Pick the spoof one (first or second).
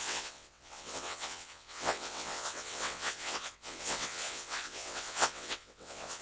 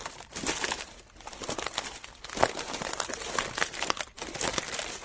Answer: first